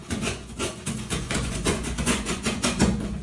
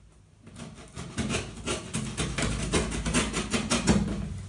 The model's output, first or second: first